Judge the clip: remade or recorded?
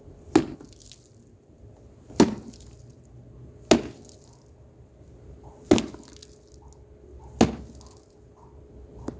recorded